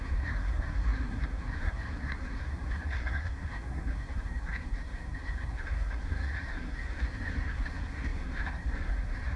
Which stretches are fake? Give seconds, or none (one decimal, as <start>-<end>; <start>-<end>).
0.0-9.4